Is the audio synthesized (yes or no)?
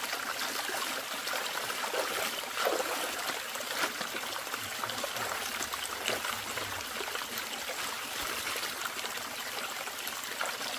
no